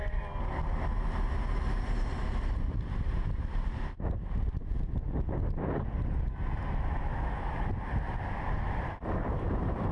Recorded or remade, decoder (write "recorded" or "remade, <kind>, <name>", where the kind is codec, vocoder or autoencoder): recorded